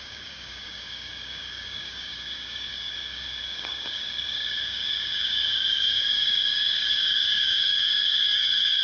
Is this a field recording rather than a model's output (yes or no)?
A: no